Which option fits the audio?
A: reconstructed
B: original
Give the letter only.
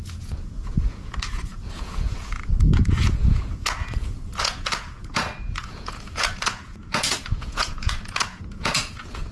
A